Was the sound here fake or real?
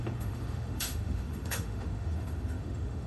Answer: fake